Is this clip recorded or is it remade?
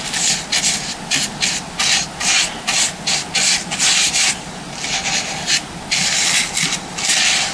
recorded